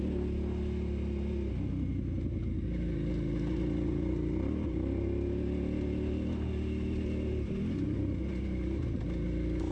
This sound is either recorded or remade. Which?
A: recorded